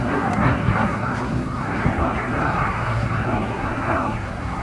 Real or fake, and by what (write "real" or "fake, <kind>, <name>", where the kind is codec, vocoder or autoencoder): fake, codec, SNAC